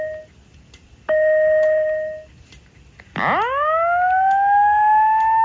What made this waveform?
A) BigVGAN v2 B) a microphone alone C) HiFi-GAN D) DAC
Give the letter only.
B